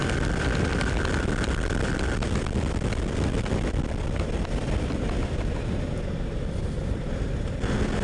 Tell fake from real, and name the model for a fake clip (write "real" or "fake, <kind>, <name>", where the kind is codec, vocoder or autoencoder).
real